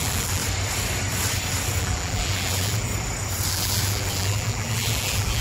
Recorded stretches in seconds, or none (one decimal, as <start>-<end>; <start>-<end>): 0.4-1.8; 2.9-3.5